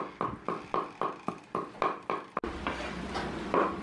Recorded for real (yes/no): yes